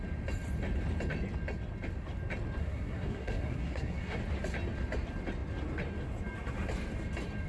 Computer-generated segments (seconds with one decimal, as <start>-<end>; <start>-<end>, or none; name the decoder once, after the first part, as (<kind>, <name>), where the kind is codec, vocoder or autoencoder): 2.6-4.2 (codec, SNAC)